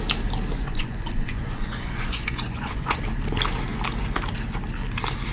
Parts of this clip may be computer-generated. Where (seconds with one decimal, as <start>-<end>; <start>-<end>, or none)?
0.5-3.0